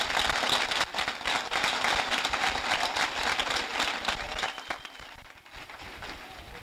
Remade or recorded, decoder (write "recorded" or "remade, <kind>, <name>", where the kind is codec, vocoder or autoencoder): recorded